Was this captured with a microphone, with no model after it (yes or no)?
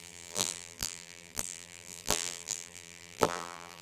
no